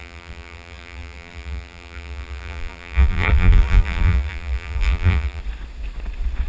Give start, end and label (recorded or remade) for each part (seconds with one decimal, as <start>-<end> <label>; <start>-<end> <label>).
0.0-5.4 remade; 5.4-6.5 recorded